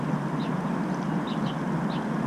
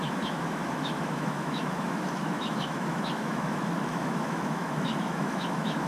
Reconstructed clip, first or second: second